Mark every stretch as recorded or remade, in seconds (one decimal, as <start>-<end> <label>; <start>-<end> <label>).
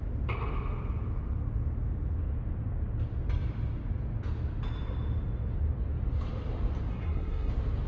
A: 0.0-6.9 recorded; 6.9-7.5 remade; 7.5-7.9 recorded